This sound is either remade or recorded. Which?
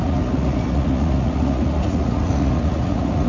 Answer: remade